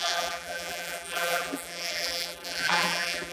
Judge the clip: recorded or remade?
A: remade